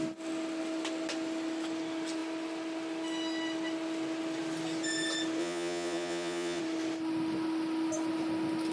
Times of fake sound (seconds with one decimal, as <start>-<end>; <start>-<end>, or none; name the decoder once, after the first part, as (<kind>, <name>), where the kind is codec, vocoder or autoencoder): 5.4-6.6 (vocoder, Vocos)